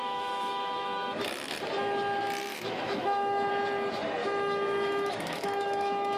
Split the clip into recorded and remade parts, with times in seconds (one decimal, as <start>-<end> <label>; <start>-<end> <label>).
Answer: 0.0-1.2 remade; 1.2-2.5 recorded; 2.5-3.5 remade; 3.5-4.2 recorded; 4.2-6.2 remade